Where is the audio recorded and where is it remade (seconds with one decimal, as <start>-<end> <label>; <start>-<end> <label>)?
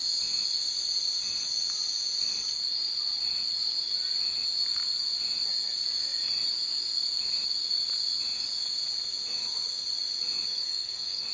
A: 0.0-10.5 recorded; 10.5-11.3 remade